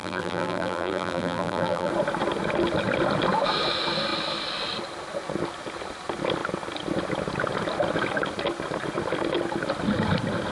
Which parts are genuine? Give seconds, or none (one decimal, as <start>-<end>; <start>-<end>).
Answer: 1.9-10.5